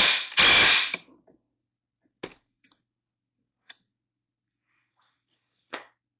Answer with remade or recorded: recorded